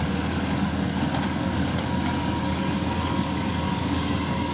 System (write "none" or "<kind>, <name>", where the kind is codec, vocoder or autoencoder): codec, DAC